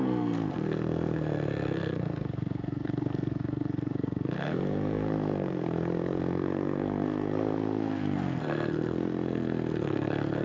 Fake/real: fake